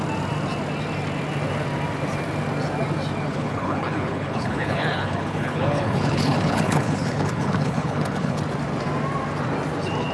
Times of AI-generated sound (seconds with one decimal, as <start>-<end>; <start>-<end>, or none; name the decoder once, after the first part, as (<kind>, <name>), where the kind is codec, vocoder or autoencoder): 3.3-8.4 (codec, HILCodec)

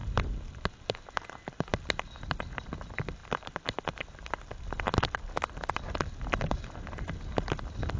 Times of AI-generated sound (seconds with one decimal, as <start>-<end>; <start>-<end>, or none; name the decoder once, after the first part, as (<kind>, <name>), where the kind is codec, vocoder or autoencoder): none

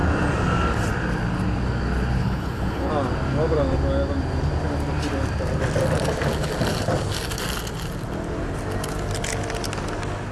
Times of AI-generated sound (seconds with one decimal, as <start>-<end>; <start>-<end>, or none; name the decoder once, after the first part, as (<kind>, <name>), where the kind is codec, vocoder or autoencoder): 2.2-2.9 (codec, HILCodec)

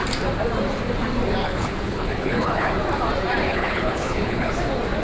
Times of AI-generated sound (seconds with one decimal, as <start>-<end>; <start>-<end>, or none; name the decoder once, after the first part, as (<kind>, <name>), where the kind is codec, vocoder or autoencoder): 1.4-2.7 (codec, HILCodec); 3.5-4.5

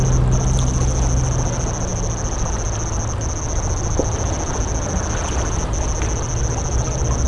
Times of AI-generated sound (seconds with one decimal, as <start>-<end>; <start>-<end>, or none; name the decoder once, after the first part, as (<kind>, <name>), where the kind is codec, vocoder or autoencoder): none

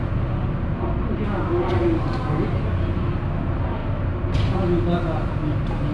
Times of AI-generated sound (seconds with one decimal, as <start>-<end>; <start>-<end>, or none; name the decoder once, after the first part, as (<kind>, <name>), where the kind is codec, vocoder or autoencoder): none

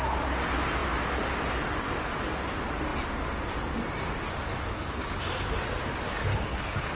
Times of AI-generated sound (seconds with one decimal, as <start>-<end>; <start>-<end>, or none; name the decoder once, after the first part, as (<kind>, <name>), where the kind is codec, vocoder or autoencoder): 4.7-5.2 (codec, HILCodec); 6.3-6.9

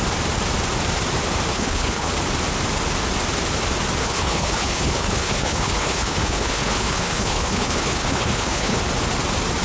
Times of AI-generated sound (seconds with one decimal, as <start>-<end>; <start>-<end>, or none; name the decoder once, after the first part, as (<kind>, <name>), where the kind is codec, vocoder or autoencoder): 1.5-2.1 (codec, HILCodec); 4.0-8.8